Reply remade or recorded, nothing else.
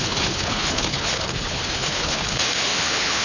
remade